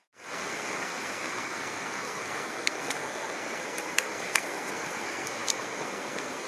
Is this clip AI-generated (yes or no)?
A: yes